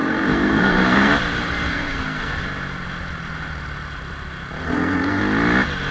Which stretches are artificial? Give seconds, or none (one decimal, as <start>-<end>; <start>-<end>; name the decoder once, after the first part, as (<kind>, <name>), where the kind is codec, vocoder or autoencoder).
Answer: 0.0-1.1 (codec, SNAC); 1.7-2.4; 4.6-5.2